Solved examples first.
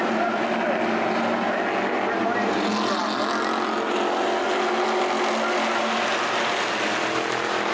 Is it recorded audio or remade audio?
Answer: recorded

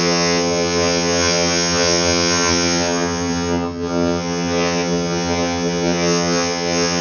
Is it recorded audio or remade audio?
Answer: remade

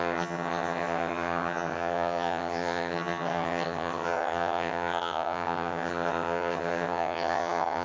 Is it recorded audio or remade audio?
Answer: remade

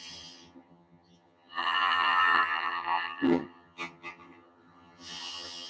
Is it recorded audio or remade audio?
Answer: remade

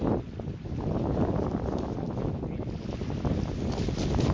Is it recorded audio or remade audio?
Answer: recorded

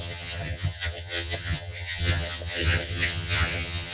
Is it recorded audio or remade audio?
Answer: remade